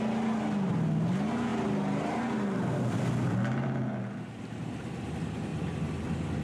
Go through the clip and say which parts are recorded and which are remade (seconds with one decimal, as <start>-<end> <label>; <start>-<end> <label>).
0.0-6.4 recorded